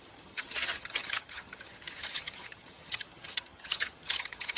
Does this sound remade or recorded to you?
remade